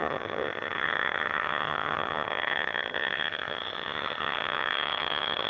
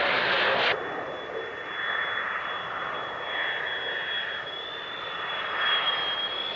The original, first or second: second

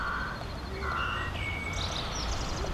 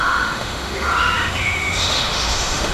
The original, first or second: first